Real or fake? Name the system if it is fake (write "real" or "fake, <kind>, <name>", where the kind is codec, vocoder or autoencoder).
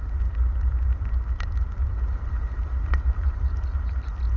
real